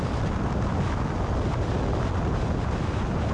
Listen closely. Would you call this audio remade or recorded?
recorded